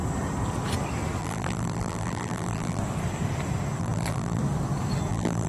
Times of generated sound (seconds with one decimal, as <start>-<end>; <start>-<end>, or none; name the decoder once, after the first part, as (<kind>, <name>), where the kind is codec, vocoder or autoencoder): 1.2-2.8 (vocoder, BigVGAN v2); 3.8-4.4; 5.1-5.5